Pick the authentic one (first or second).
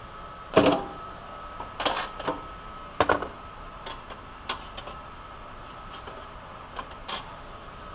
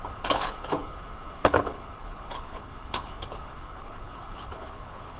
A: first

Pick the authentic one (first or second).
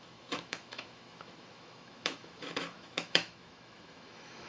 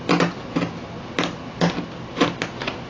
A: second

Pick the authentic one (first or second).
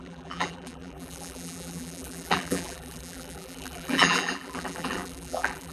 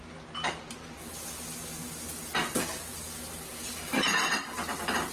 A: second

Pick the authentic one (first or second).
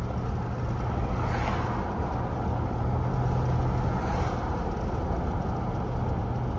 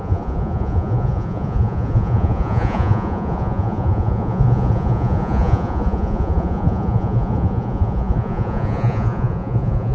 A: first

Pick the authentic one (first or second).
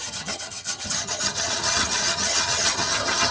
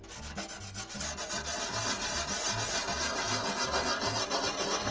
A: second